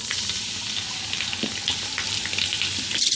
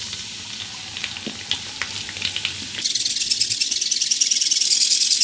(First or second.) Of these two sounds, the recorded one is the second